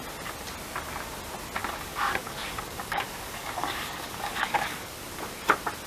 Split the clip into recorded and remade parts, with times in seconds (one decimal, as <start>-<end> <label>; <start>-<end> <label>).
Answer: 0.0-1.6 recorded; 1.6-5.1 remade; 5.1-5.9 recorded

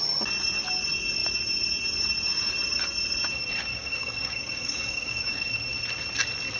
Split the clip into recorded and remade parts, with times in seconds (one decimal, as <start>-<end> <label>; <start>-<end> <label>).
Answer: 0.0-3.7 recorded; 3.7-5.5 remade; 5.5-6.6 recorded

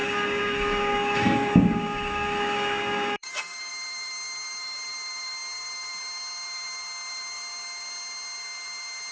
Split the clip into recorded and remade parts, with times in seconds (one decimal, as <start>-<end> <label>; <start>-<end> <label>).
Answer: 0.0-3.7 remade; 3.7-9.1 recorded